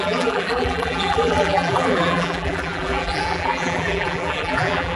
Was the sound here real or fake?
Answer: fake